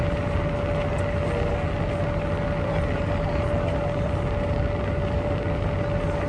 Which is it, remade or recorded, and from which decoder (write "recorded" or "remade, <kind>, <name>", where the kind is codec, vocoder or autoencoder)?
recorded